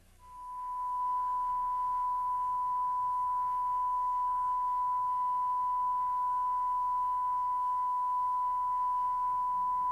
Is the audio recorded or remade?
remade